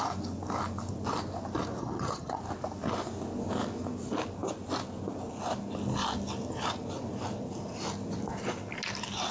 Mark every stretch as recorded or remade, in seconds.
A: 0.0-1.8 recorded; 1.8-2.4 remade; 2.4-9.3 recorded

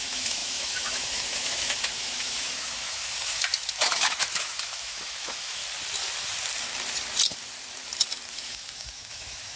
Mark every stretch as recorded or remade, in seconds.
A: 0.0-5.6 remade; 5.6-8.3 recorded; 8.3-9.6 remade